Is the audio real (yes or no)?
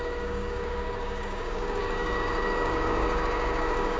no